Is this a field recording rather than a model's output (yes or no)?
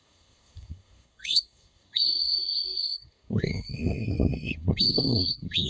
no